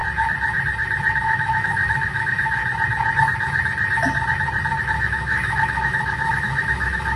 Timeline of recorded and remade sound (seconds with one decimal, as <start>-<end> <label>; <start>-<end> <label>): 0.0-1.2 recorded; 1.2-2.6 remade; 2.6-4.8 recorded; 4.8-7.2 remade